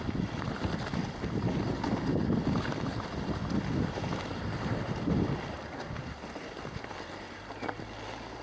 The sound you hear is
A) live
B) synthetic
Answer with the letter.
B